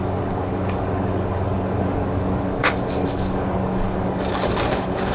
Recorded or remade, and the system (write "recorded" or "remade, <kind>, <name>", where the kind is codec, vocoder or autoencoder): remade, codec, DAC